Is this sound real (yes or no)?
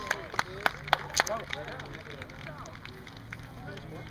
yes